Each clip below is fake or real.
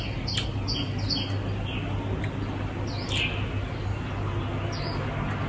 real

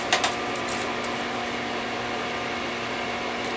real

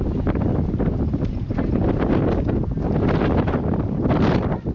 real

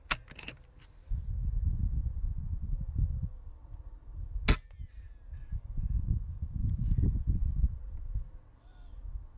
real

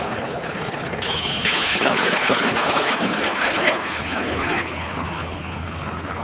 fake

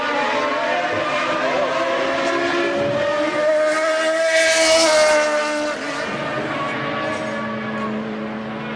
real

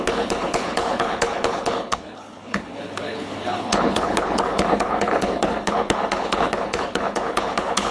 fake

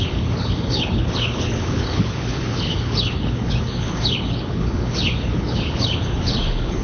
fake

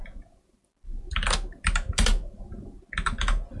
real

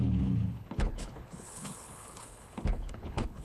fake